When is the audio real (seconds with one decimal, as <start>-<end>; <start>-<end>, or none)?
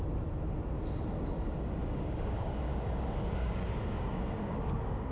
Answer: 0.0-1.8